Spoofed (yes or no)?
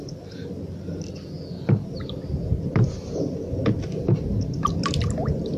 no